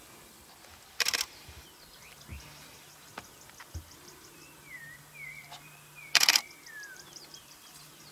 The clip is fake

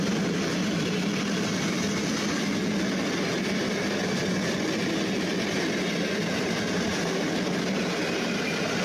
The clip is real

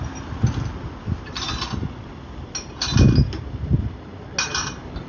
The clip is real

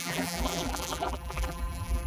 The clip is fake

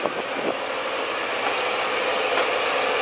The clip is real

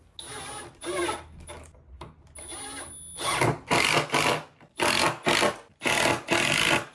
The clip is real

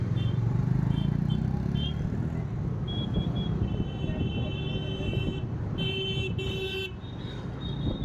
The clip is real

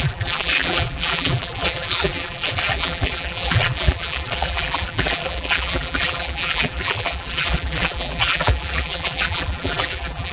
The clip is fake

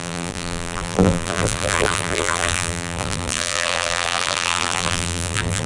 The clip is fake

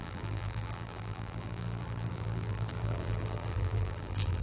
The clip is fake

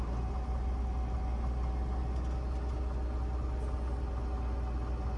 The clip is real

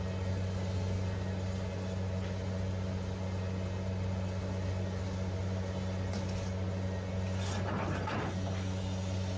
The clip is real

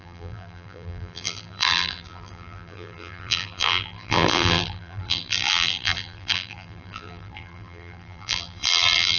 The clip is fake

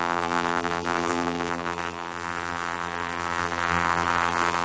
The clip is fake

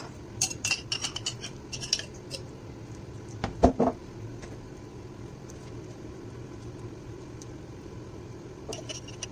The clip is fake